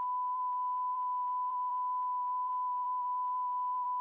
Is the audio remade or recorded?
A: remade